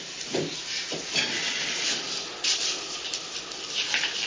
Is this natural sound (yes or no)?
yes